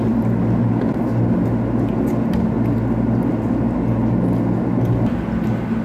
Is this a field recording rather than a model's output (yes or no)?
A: yes